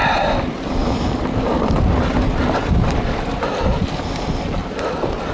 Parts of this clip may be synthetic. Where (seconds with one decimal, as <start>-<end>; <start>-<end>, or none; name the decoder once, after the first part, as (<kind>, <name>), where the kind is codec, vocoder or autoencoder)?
none